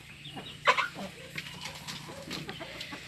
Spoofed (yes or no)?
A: no